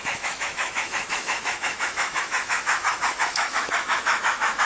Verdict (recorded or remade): remade